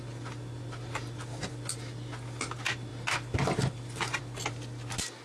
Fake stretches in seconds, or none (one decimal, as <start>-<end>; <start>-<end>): none